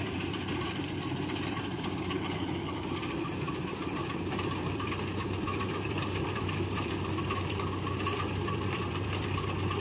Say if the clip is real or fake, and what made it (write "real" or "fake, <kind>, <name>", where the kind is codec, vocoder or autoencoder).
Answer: fake, vocoder, BigVGAN v2